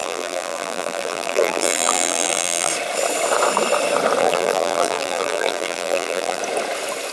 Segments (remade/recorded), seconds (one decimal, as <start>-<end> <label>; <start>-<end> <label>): 0.0-2.7 remade; 2.7-4.2 recorded; 4.2-6.4 remade; 6.4-7.1 recorded

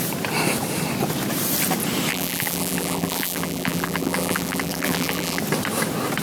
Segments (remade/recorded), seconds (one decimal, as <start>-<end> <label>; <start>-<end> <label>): 0.0-2.1 recorded; 2.1-5.4 remade; 5.4-6.2 recorded

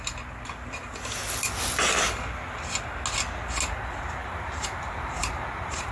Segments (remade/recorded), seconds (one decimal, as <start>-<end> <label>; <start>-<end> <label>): 0.0-4.2 recorded; 4.2-5.9 remade